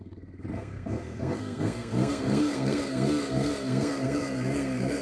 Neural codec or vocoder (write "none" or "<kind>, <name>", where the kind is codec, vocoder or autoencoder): codec, SNAC